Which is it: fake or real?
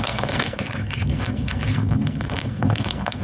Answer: fake